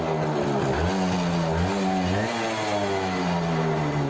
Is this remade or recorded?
recorded